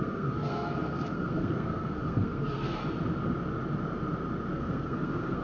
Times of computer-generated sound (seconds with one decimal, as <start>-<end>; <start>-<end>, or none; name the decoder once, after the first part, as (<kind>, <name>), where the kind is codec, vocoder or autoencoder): 0.0-2.8 (codec, SNAC); 4.5-5.4